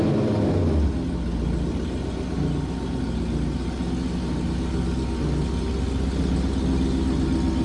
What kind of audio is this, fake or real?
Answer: real